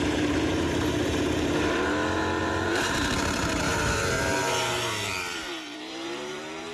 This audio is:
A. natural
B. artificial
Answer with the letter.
B